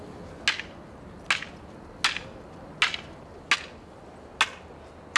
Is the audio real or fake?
real